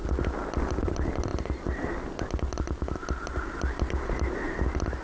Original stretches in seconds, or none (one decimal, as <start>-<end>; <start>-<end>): 0.0-0.7